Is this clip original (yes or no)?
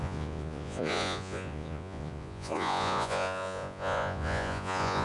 no